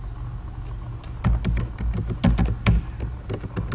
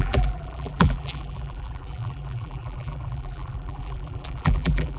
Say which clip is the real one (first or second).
first